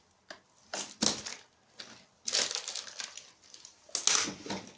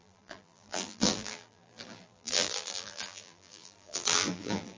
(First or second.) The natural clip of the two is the first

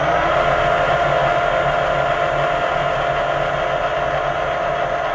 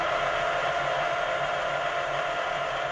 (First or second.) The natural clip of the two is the first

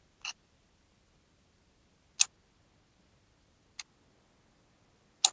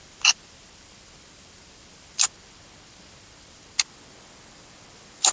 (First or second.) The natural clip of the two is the first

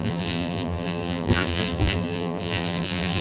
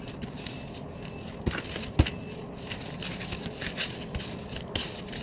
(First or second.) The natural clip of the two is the second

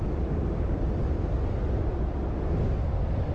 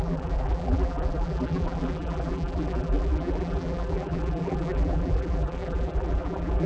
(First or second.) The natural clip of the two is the first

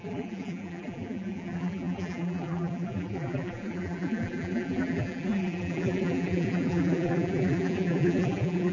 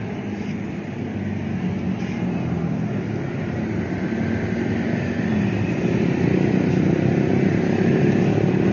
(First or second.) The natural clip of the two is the second